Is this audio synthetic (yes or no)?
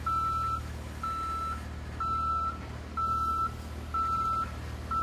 no